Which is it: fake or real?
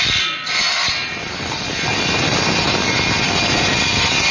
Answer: real